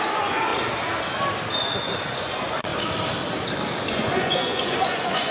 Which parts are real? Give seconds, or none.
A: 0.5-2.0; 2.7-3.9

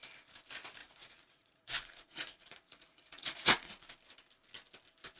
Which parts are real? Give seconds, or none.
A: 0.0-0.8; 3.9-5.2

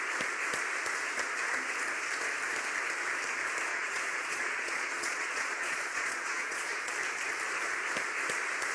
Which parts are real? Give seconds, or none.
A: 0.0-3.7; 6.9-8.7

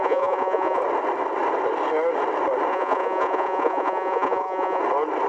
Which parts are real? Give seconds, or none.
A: 0.8-2.7; 4.8-5.3

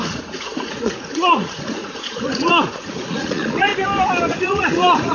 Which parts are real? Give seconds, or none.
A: 3.7-4.3

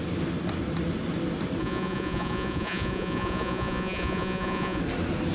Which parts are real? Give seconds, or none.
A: 0.0-1.6; 4.8-5.3